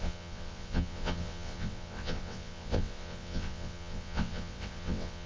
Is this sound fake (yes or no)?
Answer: yes